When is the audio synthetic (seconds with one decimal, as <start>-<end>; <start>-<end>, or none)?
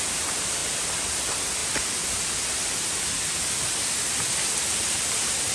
0.0-0.6; 1.1-1.6; 4.9-5.5